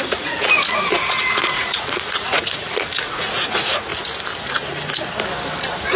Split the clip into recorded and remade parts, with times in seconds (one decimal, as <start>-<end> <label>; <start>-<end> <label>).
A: 0.0-3.9 remade; 3.9-5.6 recorded; 5.6-6.0 remade